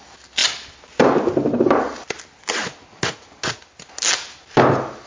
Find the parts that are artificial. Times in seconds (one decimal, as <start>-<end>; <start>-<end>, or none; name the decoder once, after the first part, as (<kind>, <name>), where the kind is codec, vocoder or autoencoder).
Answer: none